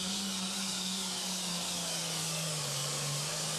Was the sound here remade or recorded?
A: remade